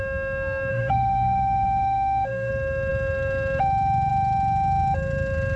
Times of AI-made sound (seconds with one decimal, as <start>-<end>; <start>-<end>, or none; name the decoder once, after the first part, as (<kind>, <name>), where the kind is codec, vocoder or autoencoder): 0.7-2.5 (autoencoder, DAC-VAE)